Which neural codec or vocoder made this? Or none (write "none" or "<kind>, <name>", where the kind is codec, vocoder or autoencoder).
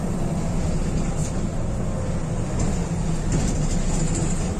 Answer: none